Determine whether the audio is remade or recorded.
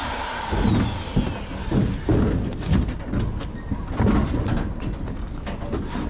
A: recorded